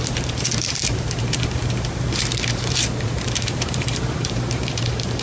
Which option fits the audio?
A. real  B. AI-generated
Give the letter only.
B